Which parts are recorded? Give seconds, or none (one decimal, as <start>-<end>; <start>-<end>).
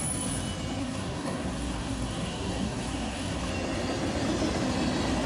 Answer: 0.0-0.8; 3.5-5.3